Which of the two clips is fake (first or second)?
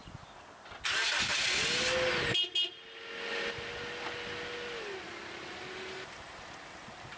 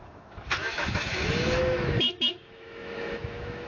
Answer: second